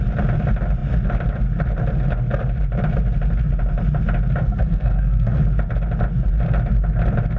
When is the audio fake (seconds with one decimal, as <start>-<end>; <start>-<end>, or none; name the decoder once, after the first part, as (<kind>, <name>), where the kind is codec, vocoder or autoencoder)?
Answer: 4.4-5.4 (codec, SNAC)